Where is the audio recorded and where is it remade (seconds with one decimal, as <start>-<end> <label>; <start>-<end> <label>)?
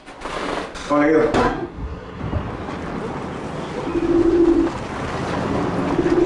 0.0-1.4 recorded; 1.4-2.2 remade; 2.2-6.3 recorded